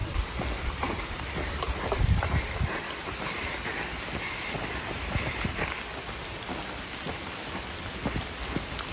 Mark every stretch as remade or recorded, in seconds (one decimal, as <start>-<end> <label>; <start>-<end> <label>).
0.0-2.6 remade; 2.6-3.0 recorded; 3.0-3.5 remade; 3.5-8.9 recorded